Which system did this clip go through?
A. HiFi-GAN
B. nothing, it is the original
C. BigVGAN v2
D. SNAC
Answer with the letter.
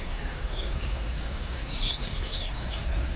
D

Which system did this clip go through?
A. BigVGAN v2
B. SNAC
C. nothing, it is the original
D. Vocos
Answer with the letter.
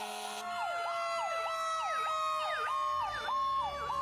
C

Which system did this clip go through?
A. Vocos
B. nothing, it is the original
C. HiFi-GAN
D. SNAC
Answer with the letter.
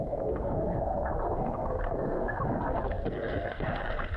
D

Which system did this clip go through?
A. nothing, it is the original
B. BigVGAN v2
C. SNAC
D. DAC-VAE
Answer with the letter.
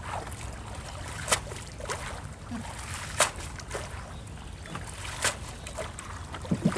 A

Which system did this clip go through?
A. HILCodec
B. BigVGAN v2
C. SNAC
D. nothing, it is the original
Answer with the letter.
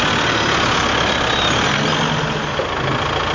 D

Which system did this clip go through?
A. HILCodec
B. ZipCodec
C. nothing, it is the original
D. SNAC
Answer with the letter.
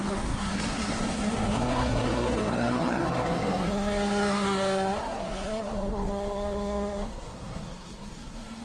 D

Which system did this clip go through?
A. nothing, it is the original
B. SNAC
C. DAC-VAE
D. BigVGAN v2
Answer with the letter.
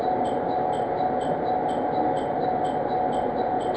A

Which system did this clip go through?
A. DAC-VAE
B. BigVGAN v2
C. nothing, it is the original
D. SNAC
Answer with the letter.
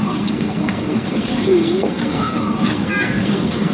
D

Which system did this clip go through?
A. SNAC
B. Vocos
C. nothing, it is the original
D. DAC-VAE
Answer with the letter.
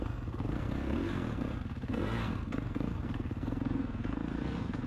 A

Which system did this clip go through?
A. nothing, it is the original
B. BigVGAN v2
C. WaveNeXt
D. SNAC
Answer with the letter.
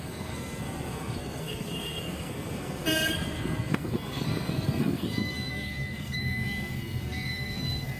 D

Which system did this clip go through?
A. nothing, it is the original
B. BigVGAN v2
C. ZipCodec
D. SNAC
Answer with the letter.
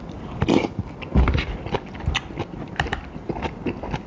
A